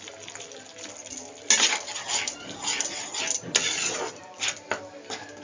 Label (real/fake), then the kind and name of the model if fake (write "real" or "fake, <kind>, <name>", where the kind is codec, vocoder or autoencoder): real